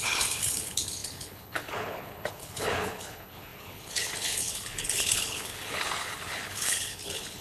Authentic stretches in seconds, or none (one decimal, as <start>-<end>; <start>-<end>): none